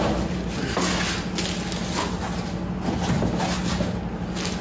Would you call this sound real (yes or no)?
yes